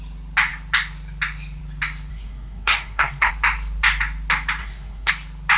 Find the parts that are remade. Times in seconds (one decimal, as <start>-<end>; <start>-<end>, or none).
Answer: 2.1-3.3; 4.6-5.1

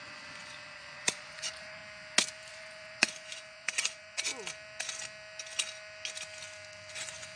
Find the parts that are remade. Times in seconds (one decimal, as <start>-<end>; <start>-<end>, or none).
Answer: 0.0-1.8; 2.5-4.3; 6.9-7.4

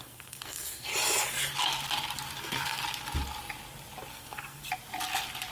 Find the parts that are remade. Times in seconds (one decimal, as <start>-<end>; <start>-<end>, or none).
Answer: 0.0-0.9; 2.4-2.8; 4.1-4.6

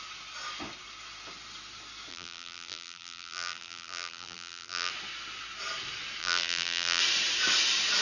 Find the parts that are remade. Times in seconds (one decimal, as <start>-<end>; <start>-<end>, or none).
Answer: 2.1-4.9; 6.2-7.0

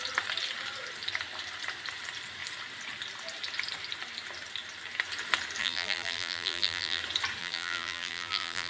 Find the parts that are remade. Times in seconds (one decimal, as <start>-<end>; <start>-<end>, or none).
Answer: 5.6-7.0; 7.4-8.7

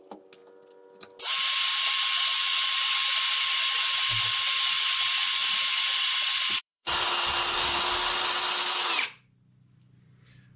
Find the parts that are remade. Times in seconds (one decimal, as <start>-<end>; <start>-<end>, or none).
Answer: 5.4-7.1